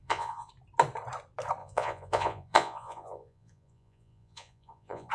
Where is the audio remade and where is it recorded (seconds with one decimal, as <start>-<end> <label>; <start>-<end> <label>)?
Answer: 0.0-0.5 remade; 0.5-1.6 recorded; 1.6-5.1 remade